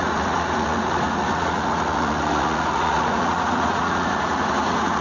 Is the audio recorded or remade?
remade